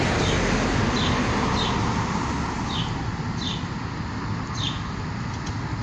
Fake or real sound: real